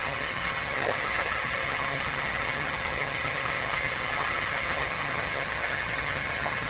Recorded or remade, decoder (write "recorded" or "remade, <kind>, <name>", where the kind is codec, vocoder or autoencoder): remade, vocoder, HiFi-GAN